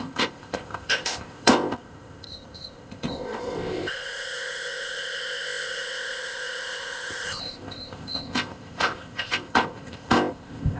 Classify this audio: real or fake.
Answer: fake